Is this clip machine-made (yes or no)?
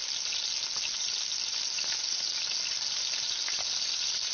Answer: no